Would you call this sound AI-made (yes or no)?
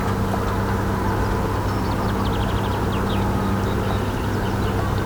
no